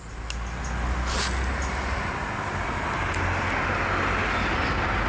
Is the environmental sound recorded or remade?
recorded